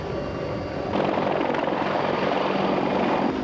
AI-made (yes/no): no